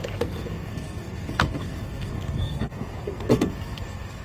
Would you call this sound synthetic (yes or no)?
yes